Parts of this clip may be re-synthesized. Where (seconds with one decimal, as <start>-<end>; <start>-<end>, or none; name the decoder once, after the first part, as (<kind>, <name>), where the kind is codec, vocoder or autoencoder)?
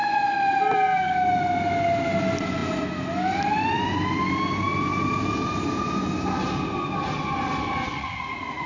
7.9-8.7 (vocoder, Vocos)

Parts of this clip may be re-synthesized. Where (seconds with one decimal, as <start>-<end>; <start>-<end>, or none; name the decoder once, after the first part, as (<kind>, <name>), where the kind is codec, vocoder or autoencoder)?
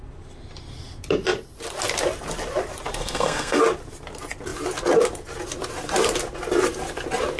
3.0-3.6 (codec, SNAC)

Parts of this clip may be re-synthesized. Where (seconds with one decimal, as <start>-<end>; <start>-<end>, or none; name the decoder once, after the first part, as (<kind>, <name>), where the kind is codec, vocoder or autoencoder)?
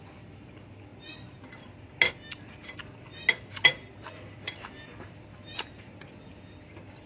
none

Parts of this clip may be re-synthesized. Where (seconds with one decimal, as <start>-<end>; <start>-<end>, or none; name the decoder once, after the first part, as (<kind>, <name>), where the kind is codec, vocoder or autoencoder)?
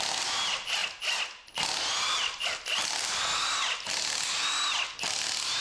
none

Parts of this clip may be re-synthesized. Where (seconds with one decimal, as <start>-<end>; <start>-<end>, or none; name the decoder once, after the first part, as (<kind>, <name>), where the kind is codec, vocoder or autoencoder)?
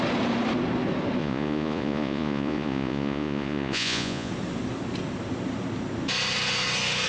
1.2-4.3 (vocoder, Vocos)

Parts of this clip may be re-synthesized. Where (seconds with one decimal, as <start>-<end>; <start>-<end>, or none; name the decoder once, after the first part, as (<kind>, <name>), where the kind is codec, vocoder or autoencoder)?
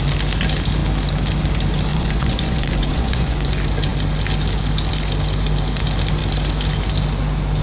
1.9-3.5 (vocoder, Vocos)